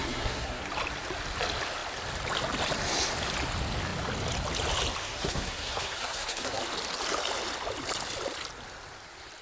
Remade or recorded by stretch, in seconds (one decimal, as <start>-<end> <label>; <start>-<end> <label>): 0.0-0.6 remade; 0.6-5.0 recorded; 5.0-6.6 remade; 6.6-9.4 recorded